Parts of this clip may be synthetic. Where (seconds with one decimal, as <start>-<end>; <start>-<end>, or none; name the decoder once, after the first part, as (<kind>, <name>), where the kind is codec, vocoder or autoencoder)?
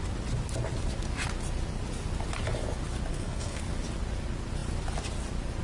3.1-3.6 (codec, SNAC)